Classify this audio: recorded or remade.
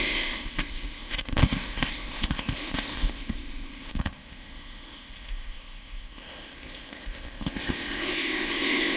remade